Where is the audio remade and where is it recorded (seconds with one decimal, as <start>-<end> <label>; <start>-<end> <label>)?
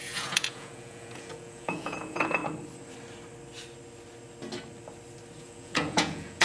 0.0-2.4 remade; 2.4-5.4 recorded; 5.4-6.4 remade